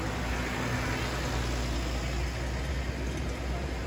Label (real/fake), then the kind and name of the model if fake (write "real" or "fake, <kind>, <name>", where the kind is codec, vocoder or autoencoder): real